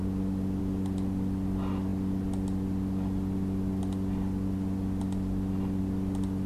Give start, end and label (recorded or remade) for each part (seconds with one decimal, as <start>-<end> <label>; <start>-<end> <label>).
0.0-6.5 recorded